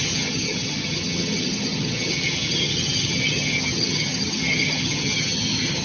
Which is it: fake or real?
fake